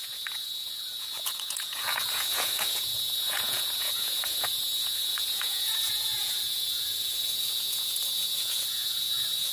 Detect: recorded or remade remade